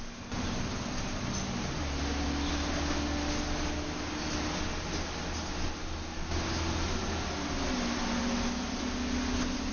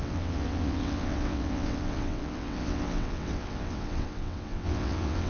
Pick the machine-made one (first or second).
second